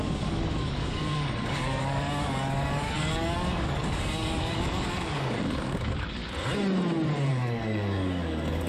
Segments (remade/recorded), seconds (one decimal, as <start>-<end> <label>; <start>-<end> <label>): 0.0-6.2 remade; 6.2-7.3 recorded; 7.3-8.7 remade